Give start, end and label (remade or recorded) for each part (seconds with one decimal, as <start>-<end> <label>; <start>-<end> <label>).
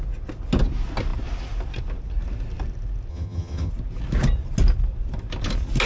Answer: 0.0-3.1 recorded; 3.1-3.7 remade; 3.7-5.9 recorded